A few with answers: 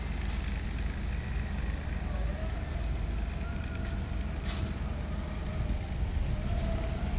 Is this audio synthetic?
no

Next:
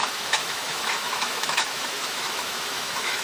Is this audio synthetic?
yes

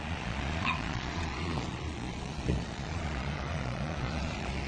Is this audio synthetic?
yes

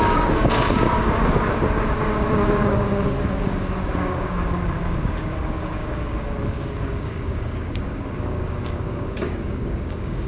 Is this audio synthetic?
yes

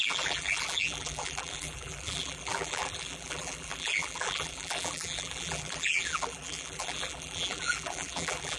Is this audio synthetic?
yes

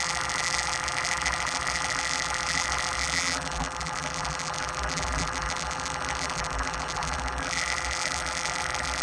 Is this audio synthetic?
yes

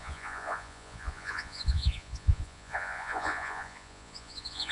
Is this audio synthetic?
yes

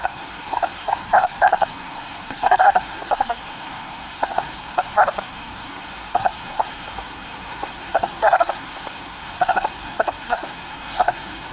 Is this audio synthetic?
yes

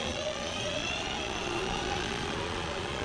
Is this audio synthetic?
yes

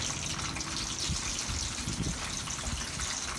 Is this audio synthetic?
no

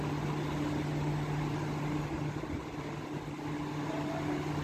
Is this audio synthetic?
no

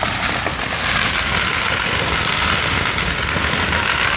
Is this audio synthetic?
no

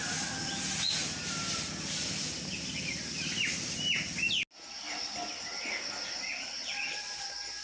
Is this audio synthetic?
no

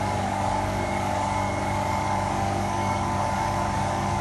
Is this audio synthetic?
yes